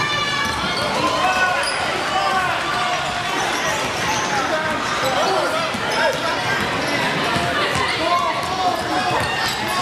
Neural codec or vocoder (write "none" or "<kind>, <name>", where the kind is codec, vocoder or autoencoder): none